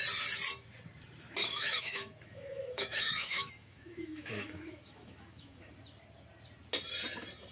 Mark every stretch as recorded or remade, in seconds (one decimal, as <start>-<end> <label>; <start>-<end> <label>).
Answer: 0.0-1.4 recorded; 1.4-5.7 remade; 5.7-7.5 recorded